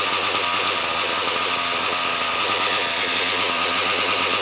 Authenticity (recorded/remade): recorded